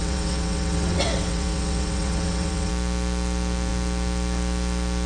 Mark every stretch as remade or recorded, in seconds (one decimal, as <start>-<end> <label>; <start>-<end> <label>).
0.0-2.7 remade; 2.7-5.1 recorded